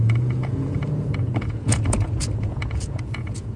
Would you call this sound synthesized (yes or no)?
yes